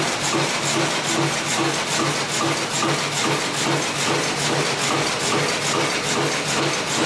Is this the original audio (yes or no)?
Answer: yes